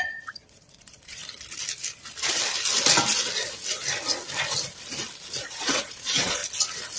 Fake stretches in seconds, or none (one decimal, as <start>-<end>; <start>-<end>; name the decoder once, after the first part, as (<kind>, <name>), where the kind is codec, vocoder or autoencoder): 0.0-1.2 (vocoder, Vocos); 5.4-6.4